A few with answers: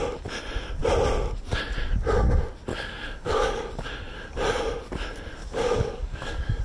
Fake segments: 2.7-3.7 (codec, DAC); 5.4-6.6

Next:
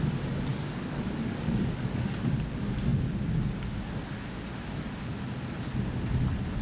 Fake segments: 0.5-2.3 (codec, DAC)

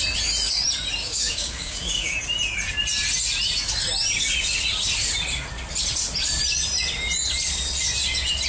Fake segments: 1.0-2.2 (codec, DAC)

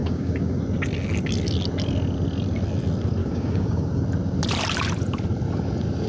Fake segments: 0.0-0.6 (codec, DAC); 3.2-4.0

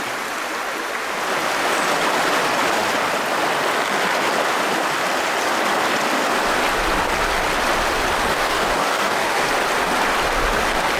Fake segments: 8.3-9.5 (codec, DAC)

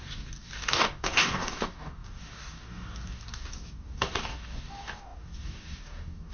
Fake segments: 0.0-6.3 (codec, DAC)

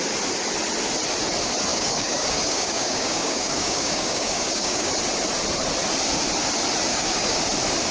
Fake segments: 1.7-4.9 (codec, DAC); 6.9-7.4